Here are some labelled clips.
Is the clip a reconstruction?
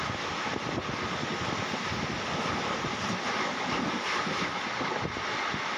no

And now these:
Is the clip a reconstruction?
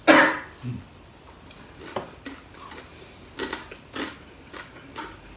no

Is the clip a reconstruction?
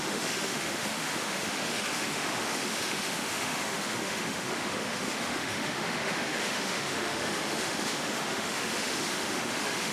yes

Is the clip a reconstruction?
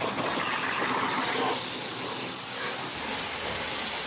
no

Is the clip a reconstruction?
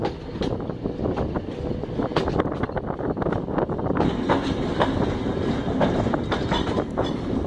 no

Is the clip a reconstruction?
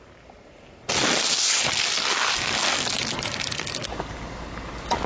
no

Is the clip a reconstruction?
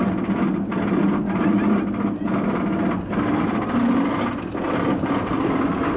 no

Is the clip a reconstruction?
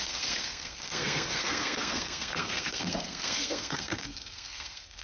yes